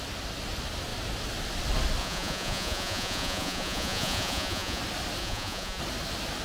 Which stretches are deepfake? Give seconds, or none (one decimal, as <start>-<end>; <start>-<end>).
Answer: 2.0-4.8; 5.2-5.8